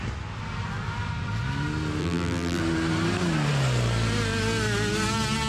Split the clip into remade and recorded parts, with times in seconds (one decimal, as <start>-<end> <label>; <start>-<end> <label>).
0.0-2.0 recorded; 2.0-2.6 remade; 2.6-5.5 recorded